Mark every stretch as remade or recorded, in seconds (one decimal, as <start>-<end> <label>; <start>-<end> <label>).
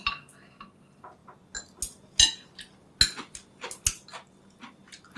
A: 0.0-5.2 recorded